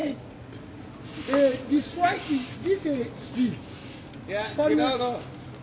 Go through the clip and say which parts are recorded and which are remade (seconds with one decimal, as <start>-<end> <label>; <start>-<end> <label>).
0.0-5.6 recorded